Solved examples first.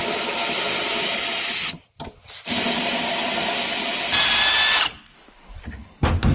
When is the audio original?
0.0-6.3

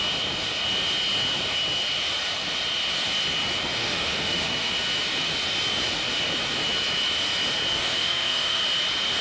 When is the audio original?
0.0-3.8; 4.7-7.7; 8.6-9.2

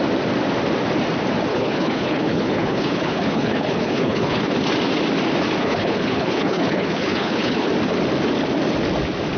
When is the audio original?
0.0-1.5; 4.5-5.6; 7.7-9.4

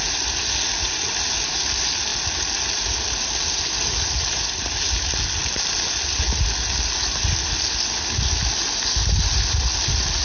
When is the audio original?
0.0-10.2

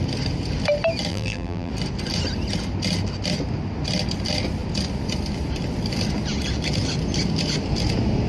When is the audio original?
0.0-1.1; 1.7-8.3

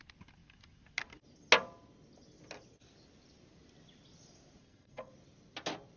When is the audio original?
0.0-4.6; 5.1-6.0

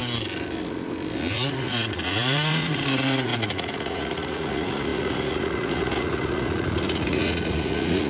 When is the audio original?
0.0-1.3